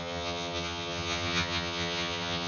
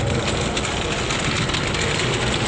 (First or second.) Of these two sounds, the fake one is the first